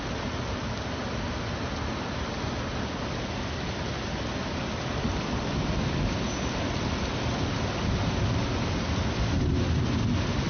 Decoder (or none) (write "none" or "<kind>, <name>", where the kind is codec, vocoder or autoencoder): none